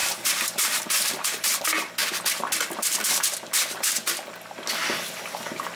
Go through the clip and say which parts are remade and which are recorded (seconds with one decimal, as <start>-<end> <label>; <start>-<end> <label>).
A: 0.0-1.6 remade; 1.6-5.8 recorded